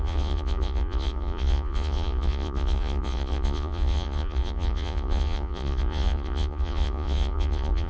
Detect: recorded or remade remade